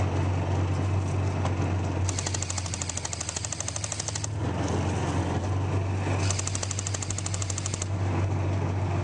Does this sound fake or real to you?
real